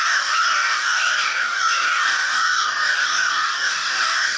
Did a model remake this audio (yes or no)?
yes